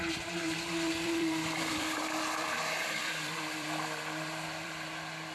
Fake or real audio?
fake